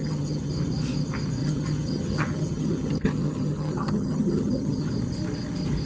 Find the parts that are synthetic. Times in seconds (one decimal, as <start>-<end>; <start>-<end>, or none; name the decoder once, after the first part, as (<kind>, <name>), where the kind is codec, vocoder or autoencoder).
0.0-0.5 (vocoder, HiFi-GAN); 1.4-4.9